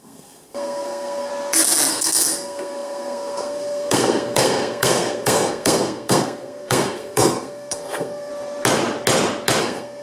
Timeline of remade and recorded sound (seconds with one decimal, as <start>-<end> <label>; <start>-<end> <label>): 0.0-1.3 remade; 1.3-1.9 recorded; 1.9-8.3 remade; 8.3-9.6 recorded; 9.6-10.0 remade